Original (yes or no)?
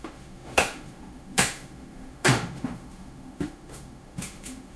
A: no